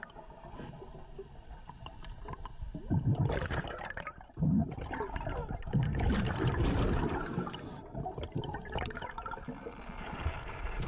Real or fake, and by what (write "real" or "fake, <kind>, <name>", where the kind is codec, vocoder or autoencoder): fake, vocoder, BigVGAN v2